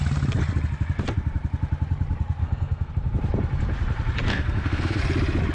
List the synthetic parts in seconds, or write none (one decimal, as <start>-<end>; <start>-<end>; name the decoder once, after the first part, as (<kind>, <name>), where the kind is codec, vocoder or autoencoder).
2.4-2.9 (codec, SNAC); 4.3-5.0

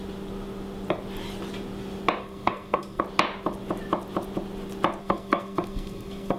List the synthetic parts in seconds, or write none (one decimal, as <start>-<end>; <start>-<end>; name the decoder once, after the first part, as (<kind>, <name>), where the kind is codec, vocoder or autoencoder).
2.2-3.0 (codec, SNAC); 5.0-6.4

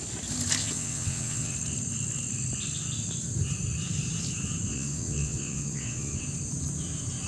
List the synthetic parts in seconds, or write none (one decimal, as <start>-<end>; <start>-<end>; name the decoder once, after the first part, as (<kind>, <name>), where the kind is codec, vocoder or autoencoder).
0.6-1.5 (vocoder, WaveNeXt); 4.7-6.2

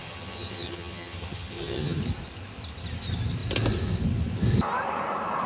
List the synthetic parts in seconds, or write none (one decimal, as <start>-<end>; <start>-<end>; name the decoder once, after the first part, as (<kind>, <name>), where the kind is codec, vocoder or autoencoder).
0.0-2.0 (vocoder, HiFi-GAN)

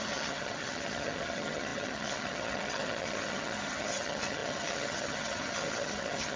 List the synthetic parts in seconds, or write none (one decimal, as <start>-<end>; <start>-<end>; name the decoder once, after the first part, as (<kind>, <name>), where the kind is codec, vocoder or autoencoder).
0.0-6.4 (vocoder, HiFi-GAN)